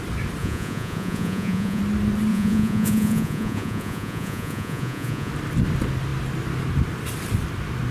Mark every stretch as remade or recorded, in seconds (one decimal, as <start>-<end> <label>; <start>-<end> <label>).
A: 0.0-0.4 recorded; 0.4-1.8 remade; 1.8-2.3 recorded; 2.3-5.3 remade; 5.3-7.9 recorded